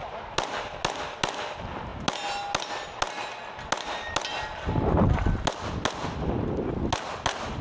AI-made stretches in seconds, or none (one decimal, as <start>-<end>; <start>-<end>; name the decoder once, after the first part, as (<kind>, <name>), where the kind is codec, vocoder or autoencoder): none